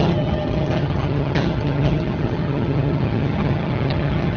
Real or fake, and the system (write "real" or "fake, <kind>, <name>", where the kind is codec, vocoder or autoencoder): fake, vocoder, HiFi-GAN